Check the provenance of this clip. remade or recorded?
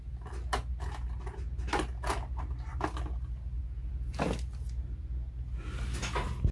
recorded